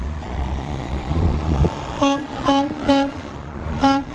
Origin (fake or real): fake